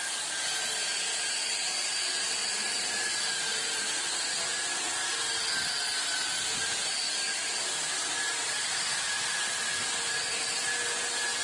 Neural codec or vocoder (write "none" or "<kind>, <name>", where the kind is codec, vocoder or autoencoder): none